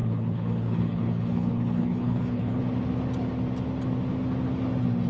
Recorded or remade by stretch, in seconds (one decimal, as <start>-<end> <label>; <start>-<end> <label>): 0.0-2.6 remade; 2.6-5.1 recorded